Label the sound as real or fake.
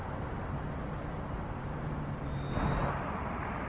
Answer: real